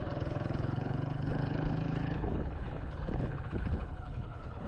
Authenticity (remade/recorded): remade